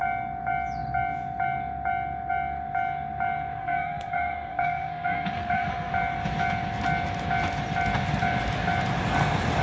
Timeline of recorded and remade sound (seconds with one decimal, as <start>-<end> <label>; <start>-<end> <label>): 0.0-3.6 recorded; 3.6-5.9 remade; 5.9-9.6 recorded